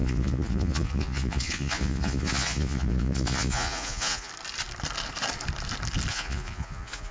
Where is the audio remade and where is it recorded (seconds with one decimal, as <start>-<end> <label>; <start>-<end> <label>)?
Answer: 0.0-4.3 remade; 4.3-6.1 recorded; 6.1-7.1 remade